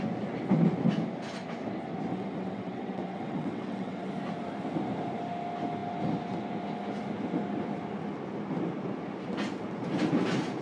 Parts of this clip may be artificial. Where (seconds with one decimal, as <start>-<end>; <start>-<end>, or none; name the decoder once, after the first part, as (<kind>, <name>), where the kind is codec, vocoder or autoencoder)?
2.1-4.1 (vocoder, WaveNeXt)